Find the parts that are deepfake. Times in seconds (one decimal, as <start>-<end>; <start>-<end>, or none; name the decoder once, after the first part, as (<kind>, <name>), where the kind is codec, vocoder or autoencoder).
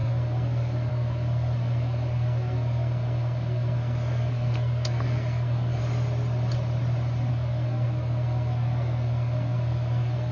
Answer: 0.0-5.8 (codec, SNAC); 7.3-10.3